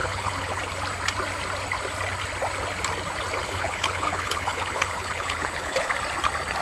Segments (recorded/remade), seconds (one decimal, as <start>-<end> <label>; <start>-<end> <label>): 0.0-0.6 remade; 0.6-3.4 recorded; 3.4-5.9 remade; 5.9-6.6 recorded